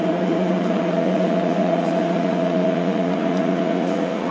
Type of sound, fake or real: fake